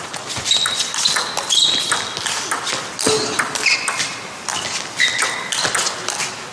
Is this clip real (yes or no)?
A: yes